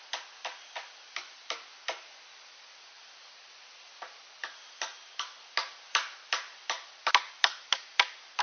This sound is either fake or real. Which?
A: real